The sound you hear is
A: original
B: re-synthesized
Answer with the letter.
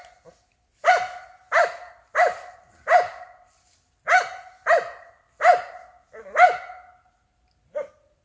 A